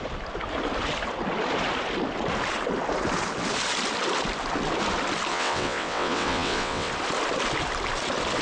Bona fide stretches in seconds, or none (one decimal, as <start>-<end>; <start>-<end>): 0.0-5.3; 6.9-8.4